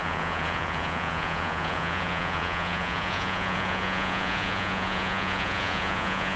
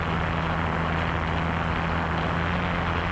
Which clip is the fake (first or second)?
first